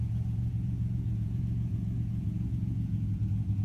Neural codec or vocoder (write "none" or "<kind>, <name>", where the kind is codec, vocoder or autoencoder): vocoder, Vocos